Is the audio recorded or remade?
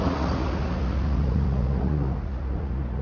remade